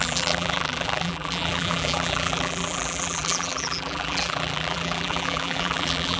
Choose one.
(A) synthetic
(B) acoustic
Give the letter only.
A